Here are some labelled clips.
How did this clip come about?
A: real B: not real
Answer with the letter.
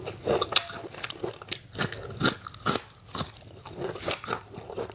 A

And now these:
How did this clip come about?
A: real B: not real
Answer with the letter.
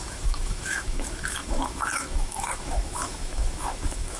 B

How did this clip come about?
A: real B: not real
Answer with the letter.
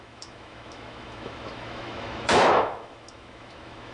B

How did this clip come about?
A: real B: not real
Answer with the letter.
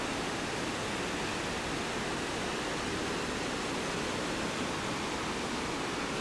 A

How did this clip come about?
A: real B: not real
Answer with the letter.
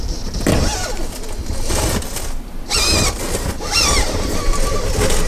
A